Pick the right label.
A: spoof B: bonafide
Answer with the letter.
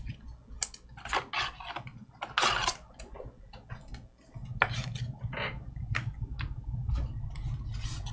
B